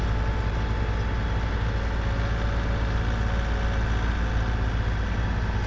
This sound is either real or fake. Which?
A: real